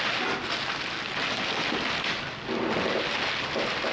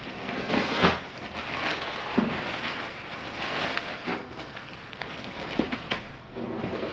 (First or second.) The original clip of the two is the first